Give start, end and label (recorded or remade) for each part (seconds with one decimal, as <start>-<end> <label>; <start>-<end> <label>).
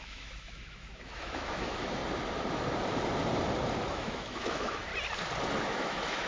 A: 0.0-2.0 remade; 2.0-3.9 recorded; 3.9-4.9 remade; 4.9-5.6 recorded; 5.6-6.3 remade